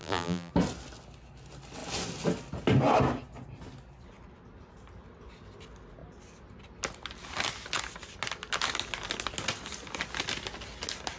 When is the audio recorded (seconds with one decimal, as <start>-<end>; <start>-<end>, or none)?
0.5-11.2